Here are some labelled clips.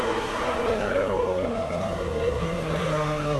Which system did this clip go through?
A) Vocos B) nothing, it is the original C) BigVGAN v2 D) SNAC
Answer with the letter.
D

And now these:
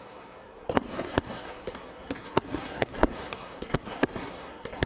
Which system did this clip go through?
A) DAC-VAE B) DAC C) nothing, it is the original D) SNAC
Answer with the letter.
D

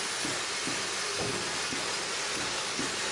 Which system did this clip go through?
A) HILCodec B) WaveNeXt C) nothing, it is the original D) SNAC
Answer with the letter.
C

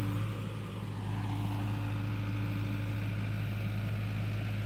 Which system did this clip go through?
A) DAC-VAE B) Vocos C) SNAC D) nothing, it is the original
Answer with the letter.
D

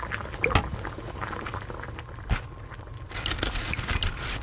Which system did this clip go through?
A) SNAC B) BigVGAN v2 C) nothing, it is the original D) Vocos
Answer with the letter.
C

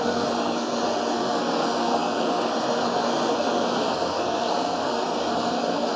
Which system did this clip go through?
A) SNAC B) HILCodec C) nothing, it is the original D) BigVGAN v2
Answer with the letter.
A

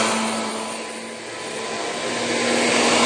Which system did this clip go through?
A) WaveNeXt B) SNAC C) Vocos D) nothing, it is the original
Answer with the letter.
D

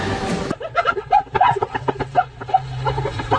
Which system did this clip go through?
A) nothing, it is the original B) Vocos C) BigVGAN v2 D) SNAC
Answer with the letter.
A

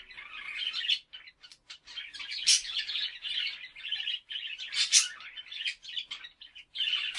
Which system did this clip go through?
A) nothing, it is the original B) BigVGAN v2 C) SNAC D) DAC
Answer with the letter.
A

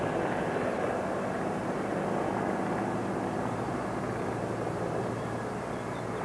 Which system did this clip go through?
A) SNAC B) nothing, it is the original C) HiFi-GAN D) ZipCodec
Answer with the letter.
B